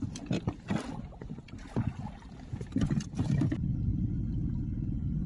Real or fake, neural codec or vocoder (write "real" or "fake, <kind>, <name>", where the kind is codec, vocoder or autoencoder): real